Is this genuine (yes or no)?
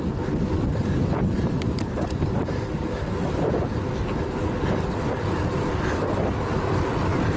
yes